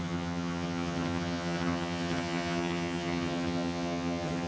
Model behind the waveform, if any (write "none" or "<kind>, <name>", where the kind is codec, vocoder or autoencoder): vocoder, HiFi-GAN